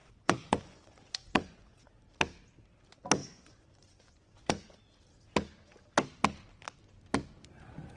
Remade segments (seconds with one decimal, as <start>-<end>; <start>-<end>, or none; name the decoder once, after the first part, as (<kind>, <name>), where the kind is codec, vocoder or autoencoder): 0.0-1.9 (vocoder, Vocos); 3.2-4.8